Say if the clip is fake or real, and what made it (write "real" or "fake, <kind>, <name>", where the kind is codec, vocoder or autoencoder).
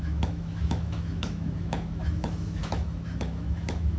fake, autoencoder, DAC-VAE